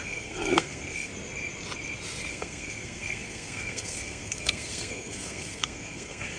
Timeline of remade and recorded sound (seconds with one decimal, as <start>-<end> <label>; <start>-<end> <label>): 0.0-1.1 remade; 1.1-2.3 recorded; 2.3-6.4 remade